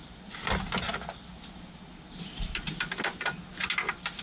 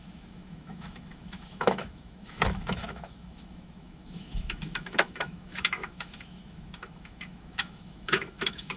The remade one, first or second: second